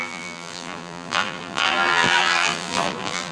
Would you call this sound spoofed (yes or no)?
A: yes